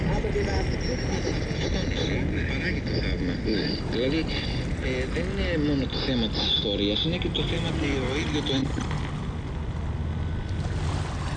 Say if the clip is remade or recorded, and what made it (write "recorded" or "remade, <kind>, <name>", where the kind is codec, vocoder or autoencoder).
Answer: recorded